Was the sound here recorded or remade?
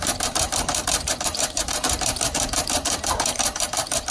remade